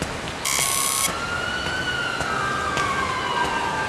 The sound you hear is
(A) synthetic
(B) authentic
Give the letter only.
B